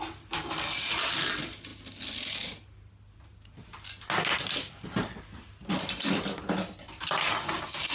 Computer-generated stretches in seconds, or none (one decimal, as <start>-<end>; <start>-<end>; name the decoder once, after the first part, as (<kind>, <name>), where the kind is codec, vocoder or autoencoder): none